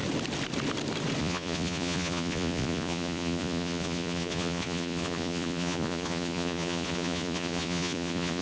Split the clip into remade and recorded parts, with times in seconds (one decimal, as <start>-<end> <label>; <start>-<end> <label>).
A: 0.0-1.2 recorded; 1.2-8.4 remade